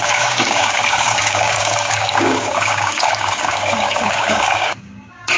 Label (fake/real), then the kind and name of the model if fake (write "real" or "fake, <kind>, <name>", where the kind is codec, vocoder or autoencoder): fake, codec, DAC